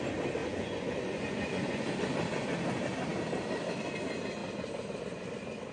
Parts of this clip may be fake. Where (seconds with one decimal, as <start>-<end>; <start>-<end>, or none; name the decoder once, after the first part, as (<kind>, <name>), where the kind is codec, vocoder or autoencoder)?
0.4-1.9 (vocoder, Vocos)